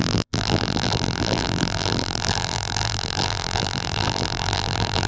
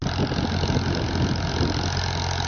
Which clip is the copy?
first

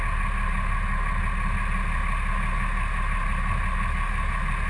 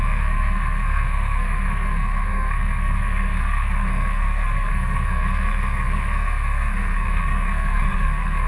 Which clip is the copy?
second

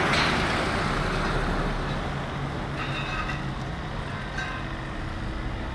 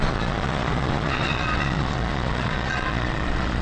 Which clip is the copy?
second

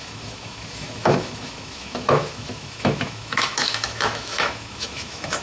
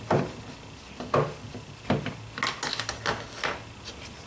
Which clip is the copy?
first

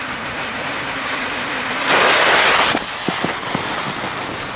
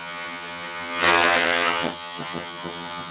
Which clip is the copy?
second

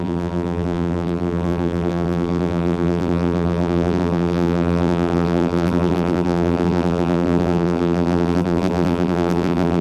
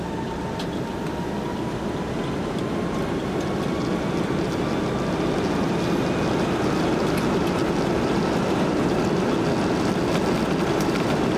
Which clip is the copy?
first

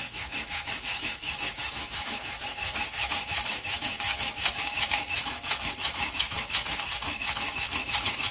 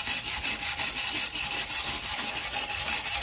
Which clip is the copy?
first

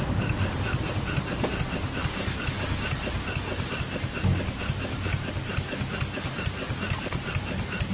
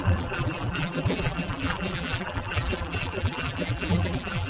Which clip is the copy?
second